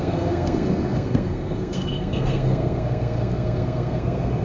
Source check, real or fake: fake